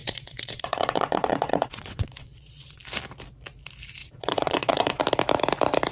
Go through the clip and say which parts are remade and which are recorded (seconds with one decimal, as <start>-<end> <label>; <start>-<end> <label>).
0.0-2.8 remade; 2.8-4.0 recorded; 4.0-5.0 remade; 5.0-5.9 recorded